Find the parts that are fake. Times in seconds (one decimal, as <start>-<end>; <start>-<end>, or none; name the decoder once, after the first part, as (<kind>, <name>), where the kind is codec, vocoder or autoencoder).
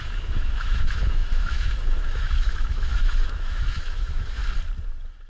0.0-4.4 (autoencoder, DAC-VAE)